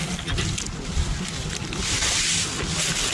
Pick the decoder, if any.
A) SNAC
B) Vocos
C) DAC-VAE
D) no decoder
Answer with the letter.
D